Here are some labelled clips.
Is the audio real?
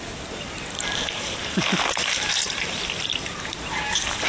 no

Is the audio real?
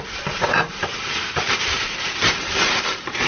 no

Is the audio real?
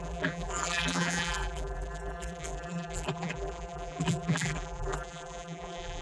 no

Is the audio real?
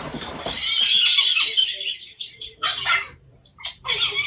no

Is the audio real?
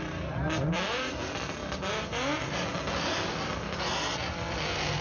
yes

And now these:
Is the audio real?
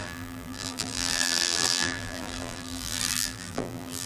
no